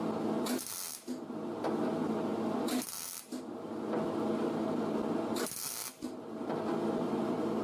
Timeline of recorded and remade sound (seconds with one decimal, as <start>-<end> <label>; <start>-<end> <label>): 0.0-5.8 recorded; 5.8-6.4 remade; 6.4-7.6 recorded